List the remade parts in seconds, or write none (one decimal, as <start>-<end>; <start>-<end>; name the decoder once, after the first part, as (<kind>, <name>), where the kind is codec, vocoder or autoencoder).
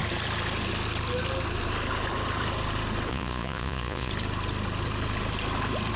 3.1-4.1 (vocoder, Vocos)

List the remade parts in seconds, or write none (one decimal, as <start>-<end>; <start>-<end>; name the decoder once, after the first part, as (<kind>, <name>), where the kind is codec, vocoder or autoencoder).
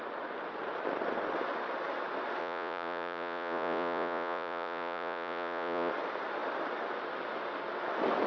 2.4-5.9 (vocoder, Vocos)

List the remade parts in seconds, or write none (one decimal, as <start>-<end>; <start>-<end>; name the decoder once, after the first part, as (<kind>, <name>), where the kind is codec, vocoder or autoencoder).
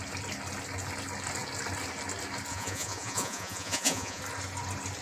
2.5-4.2 (vocoder, Vocos)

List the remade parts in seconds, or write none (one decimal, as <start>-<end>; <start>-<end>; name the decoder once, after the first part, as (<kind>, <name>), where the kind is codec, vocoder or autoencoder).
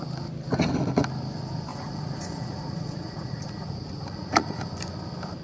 1.7-4.7 (vocoder, Vocos)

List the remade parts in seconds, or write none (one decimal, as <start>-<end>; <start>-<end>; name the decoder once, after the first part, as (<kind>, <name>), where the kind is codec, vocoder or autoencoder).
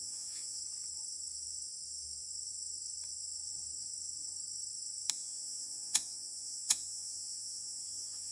0.0-0.6 (vocoder, Vocos); 5.1-8.3